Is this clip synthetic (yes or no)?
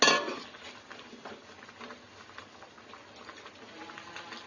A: no